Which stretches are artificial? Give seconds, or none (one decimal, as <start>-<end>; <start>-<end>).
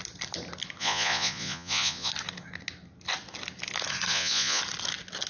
0.8-2.1; 4.1-4.6